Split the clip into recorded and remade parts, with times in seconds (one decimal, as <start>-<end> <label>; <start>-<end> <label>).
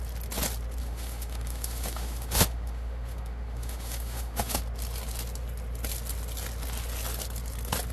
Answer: 0.0-0.8 recorded; 0.8-4.6 remade; 4.6-7.9 recorded